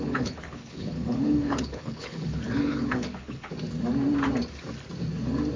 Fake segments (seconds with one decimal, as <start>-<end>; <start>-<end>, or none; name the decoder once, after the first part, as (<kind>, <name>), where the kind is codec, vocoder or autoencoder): 0.0-3.5 (codec, HILCodec)